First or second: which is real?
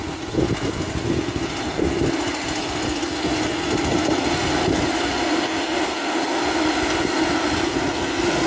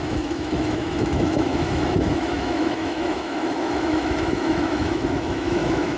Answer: first